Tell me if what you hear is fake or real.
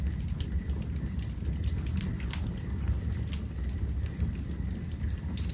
real